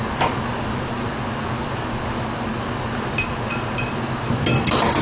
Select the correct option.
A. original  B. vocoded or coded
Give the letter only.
A